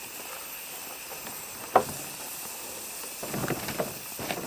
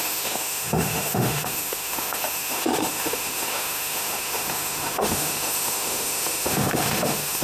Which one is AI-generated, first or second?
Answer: second